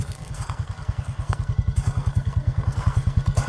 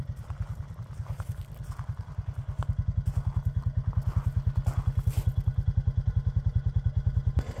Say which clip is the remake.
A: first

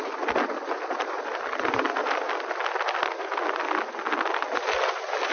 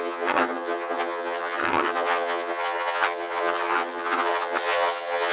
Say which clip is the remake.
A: second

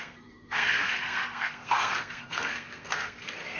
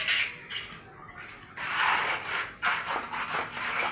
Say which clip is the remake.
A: first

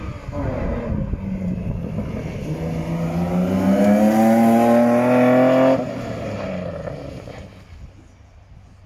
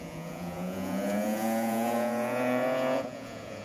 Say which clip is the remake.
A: second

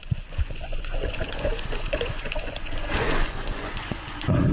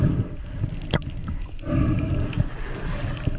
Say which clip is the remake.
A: first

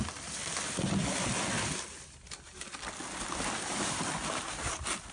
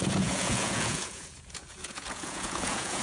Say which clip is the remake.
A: second